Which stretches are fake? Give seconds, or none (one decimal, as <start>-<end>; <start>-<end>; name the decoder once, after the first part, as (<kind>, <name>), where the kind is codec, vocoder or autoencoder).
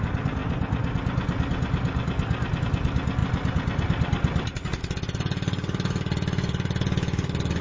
none